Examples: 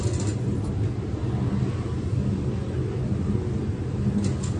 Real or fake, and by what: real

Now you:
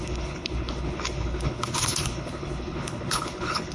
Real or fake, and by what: fake, codec, HILCodec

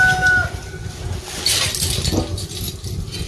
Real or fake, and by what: real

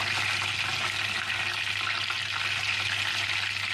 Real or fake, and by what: real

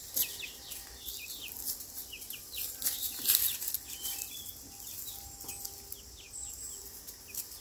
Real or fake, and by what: real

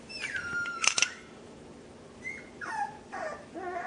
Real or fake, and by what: real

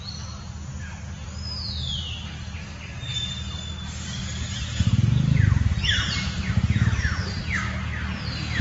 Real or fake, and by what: real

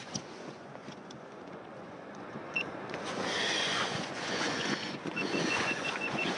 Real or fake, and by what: fake, vocoder, Vocos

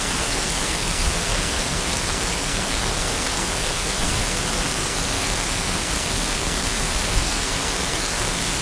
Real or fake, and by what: fake, codec, SNAC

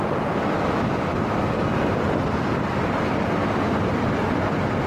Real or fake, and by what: real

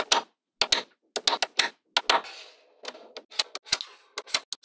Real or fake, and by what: real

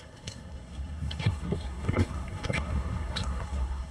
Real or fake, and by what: fake, codec, SNAC